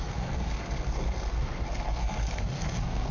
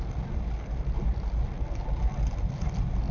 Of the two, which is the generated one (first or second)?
first